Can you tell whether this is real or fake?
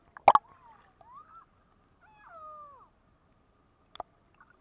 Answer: real